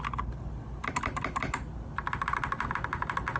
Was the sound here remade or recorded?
recorded